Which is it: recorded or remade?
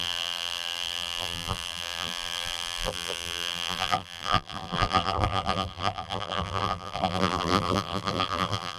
remade